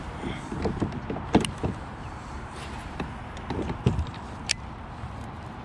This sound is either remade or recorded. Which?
recorded